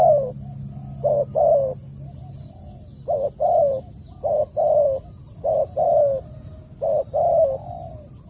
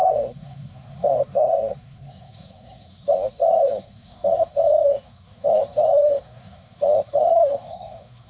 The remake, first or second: second